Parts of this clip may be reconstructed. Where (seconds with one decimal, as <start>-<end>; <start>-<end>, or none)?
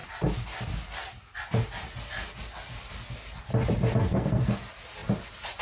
4.0-4.6